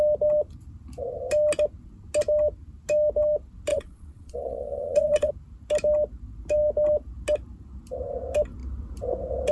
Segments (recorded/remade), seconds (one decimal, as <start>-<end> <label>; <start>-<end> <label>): 0.0-3.7 recorded; 3.7-5.3 remade; 5.3-9.5 recorded